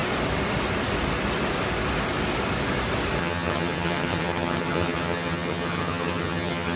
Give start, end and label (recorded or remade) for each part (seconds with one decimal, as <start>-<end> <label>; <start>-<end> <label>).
0.0-3.2 recorded; 3.2-6.8 remade